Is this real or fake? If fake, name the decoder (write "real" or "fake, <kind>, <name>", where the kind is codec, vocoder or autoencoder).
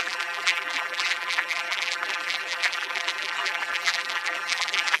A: fake, vocoder, BigVGAN v2